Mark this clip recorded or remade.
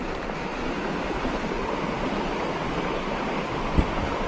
recorded